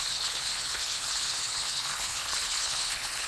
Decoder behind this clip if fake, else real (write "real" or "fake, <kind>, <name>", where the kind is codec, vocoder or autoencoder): fake, codec, HILCodec